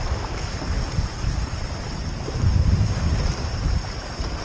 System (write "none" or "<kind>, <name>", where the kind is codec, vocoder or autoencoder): none